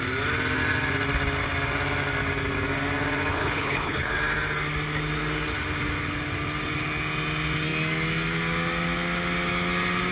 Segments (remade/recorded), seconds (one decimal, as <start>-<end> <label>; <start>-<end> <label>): 0.0-3.3 recorded; 3.3-4.1 remade; 4.1-10.1 recorded